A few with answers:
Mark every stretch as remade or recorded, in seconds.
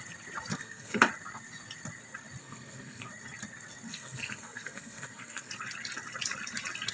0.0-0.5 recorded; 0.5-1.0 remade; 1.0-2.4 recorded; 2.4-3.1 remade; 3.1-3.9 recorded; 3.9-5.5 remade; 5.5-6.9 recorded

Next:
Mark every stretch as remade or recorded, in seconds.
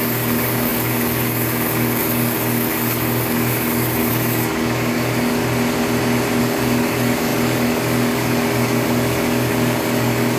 0.0-5.4 remade; 5.4-6.4 recorded; 6.4-10.4 remade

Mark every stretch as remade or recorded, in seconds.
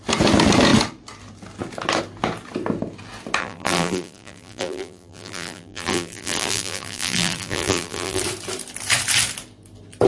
0.0-3.4 recorded; 3.4-8.2 remade; 8.2-10.1 recorded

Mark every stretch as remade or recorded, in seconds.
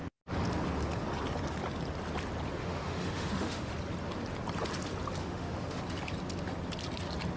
0.0-2.6 recorded; 2.6-3.7 remade; 3.7-5.2 recorded; 5.2-5.8 remade; 5.8-7.4 recorded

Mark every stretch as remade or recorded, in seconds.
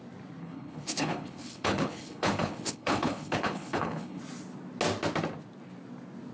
0.0-0.4 recorded; 0.4-4.2 remade; 4.2-6.3 recorded